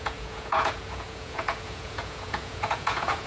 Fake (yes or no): yes